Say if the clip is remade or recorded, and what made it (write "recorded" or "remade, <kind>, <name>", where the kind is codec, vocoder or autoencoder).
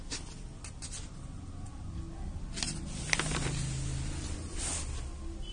recorded